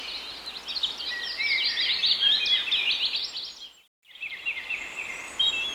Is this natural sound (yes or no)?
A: yes